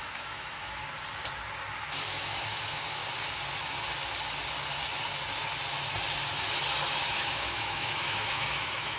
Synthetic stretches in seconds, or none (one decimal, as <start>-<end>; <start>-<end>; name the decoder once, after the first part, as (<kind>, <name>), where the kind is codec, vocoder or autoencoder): 0.0-0.8 (autoencoder, DAC-VAE); 2.0-3.0; 7.0-9.0